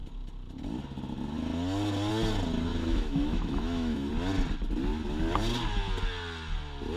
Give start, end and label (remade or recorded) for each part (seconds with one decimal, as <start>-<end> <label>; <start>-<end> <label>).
0.0-2.7 recorded; 2.7-4.1 remade; 4.1-7.0 recorded